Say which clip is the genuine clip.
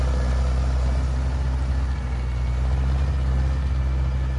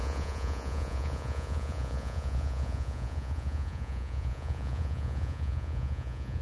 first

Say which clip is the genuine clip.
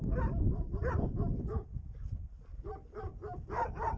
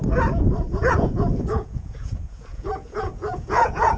first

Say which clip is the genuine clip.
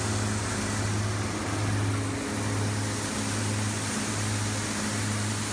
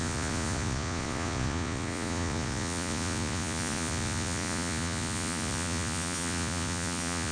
first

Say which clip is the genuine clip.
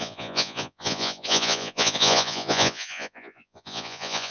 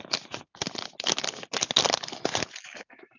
second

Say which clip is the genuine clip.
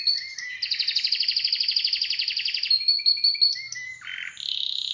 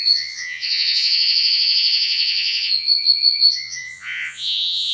first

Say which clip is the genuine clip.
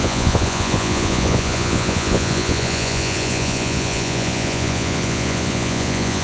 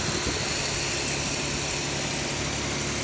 second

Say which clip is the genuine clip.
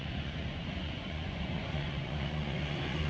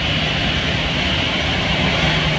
second